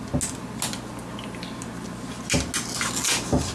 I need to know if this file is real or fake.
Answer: real